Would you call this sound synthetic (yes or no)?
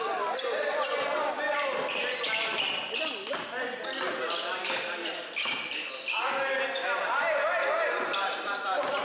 no